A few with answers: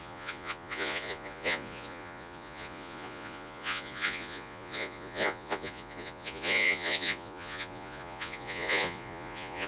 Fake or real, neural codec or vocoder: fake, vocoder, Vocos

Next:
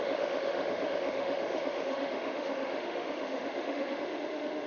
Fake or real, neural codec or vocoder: fake, autoencoder, DAC-VAE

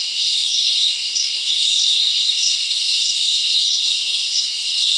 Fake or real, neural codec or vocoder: fake, codec, SNAC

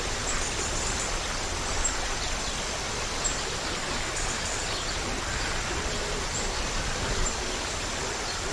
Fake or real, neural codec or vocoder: fake, vocoder, BigVGAN v2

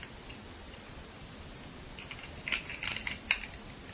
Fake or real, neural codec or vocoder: real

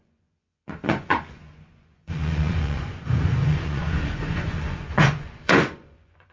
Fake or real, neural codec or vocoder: fake, vocoder, Vocos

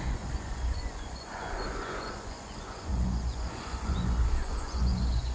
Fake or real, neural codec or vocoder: fake, vocoder, Vocos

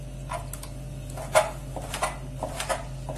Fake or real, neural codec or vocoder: real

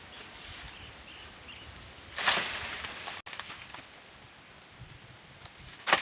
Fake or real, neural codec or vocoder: real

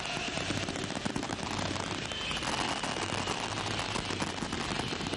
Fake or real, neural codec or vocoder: real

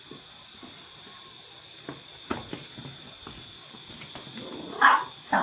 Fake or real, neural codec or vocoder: real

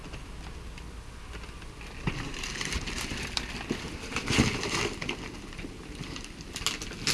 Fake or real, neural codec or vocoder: real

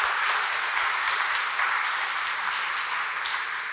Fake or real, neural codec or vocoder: real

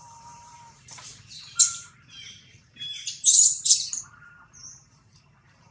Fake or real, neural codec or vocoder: fake, vocoder, BigVGAN v2